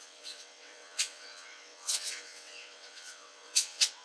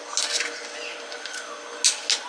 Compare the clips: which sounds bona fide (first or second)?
second